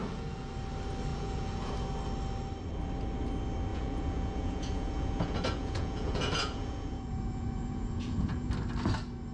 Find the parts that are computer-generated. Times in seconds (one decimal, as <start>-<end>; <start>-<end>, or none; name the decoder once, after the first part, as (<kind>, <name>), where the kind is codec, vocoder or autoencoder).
0.0-0.5 (vocoder, Vocos); 1.1-1.7; 3.7-8.5